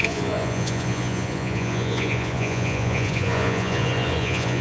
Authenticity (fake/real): fake